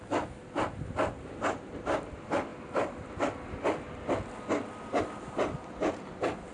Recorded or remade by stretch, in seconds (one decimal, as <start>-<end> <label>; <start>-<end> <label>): 0.0-6.5 recorded